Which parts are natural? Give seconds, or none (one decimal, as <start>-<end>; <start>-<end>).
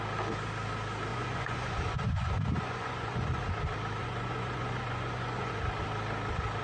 0.0-1.1; 3.4-4.0; 5.5-6.6